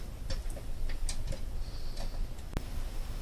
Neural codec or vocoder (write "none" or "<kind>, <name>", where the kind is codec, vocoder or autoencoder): none